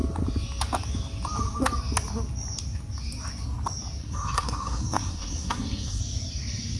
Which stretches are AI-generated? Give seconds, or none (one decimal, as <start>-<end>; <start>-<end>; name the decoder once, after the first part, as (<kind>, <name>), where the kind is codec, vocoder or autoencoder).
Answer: 4.0-6.0 (codec, SNAC)